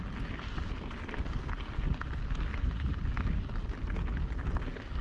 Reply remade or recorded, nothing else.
recorded